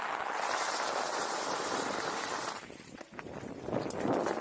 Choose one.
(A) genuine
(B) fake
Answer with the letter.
A